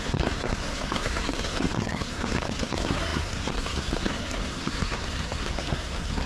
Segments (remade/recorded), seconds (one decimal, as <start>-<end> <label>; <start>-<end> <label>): 0.0-6.3 remade